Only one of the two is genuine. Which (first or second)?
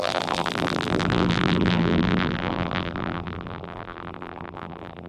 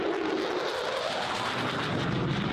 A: second